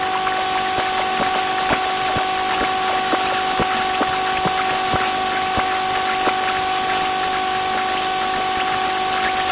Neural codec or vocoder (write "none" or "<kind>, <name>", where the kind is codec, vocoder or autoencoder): none